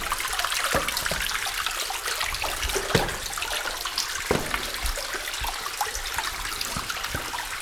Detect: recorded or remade recorded